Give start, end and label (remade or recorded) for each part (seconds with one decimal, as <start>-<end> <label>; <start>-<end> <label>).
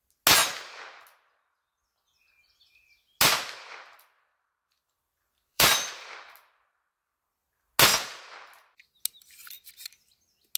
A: 0.0-4.3 recorded; 4.3-6.5 remade; 6.5-10.6 recorded